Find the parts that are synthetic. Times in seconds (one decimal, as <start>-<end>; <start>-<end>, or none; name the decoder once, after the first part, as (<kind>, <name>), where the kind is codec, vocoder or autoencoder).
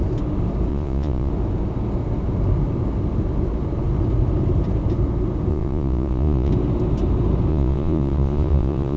0.7-1.3 (vocoder, Vocos); 5.5-6.5; 7.5-9.0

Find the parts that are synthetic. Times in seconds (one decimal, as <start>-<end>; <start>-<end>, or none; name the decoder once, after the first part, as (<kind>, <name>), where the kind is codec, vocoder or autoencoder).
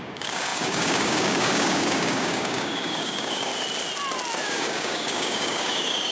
0.0-3.5 (codec, DAC); 4.4-6.1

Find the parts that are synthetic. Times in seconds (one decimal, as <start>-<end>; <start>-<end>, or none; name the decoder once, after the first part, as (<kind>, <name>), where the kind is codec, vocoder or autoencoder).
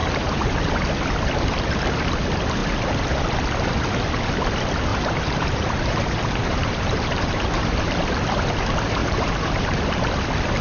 4.9-7.8 (vocoder, BigVGAN v2); 9.0-10.0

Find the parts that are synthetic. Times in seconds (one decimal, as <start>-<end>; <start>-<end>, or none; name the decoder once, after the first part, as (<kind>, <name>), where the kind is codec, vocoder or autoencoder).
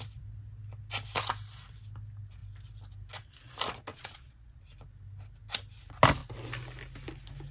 3.9-4.6 (vocoder, Vocos)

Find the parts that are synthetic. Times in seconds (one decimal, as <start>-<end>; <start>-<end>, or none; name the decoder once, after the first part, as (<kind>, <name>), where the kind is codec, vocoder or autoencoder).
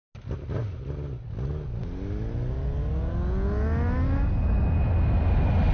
none